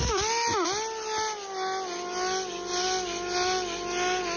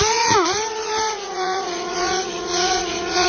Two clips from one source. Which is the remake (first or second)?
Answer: second